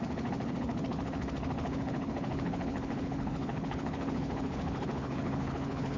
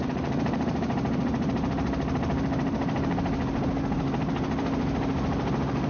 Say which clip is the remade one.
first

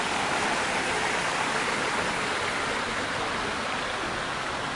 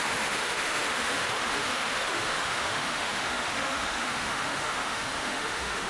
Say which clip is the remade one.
second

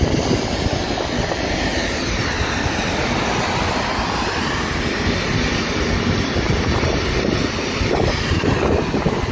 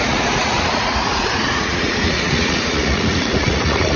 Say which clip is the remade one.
second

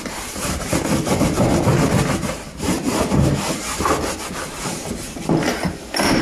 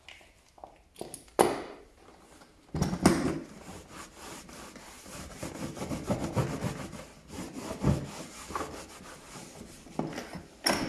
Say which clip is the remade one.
first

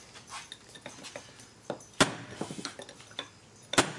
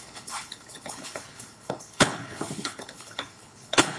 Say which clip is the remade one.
second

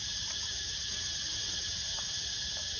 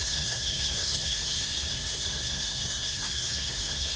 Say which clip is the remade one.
second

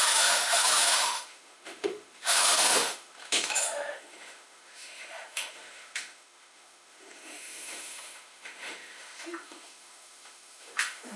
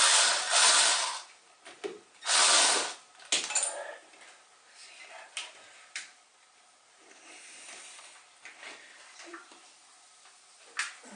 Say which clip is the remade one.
first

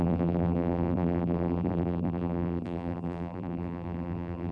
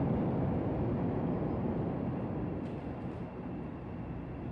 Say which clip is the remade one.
first